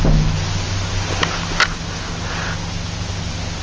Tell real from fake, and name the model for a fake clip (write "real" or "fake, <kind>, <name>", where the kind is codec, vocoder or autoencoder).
real